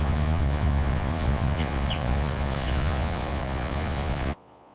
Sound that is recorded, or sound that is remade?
remade